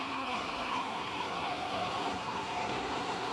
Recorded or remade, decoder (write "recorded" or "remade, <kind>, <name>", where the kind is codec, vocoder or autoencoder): remade, codec, SNAC